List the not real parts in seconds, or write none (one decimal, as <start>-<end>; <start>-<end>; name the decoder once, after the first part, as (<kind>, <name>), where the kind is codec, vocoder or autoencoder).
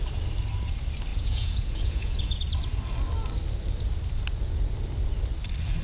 1.1-2.4 (vocoder, Vocos)